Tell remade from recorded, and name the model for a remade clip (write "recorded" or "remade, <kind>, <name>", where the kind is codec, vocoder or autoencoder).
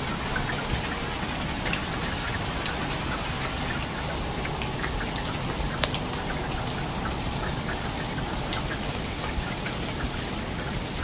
recorded